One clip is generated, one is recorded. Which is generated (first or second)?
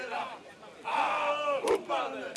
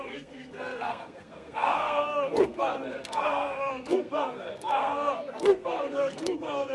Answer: second